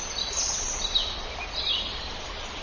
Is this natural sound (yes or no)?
yes